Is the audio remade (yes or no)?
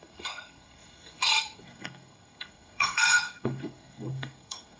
yes